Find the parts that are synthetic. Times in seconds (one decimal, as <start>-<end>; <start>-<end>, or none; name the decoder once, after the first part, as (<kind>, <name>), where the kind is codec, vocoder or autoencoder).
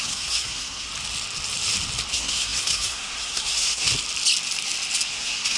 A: 0.0-0.9 (codec, SNAC); 2.1-3.9; 5.1-5.6